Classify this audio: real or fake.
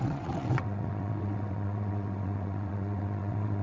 fake